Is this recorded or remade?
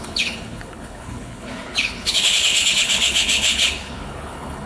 remade